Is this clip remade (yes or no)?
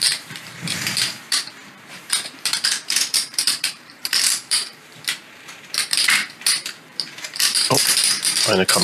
yes